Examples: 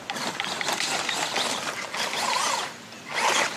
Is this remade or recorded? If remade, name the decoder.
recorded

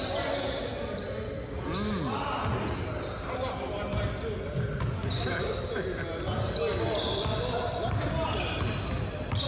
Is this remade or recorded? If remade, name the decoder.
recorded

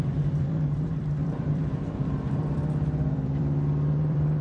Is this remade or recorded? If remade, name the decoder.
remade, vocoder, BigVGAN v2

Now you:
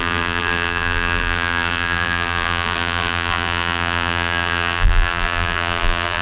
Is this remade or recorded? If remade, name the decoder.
remade, vocoder, BigVGAN v2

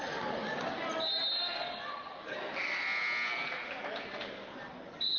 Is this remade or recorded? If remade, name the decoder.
recorded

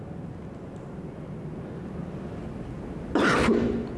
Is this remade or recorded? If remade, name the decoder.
recorded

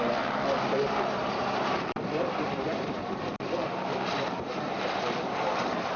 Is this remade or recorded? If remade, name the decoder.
remade, vocoder, BigVGAN v2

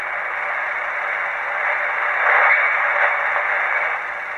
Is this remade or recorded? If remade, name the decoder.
recorded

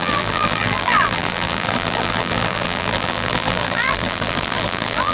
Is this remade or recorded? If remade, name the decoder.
remade, vocoder, BigVGAN v2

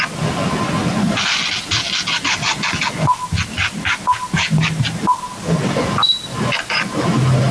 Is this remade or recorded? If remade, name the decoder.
recorded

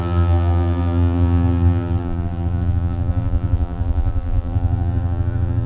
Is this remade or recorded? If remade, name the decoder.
remade, vocoder, BigVGAN v2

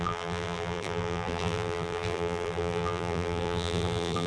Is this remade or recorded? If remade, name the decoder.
remade, vocoder, BigVGAN v2